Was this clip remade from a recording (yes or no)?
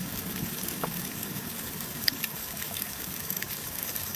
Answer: yes